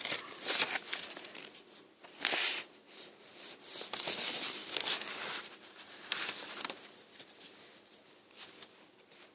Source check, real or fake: real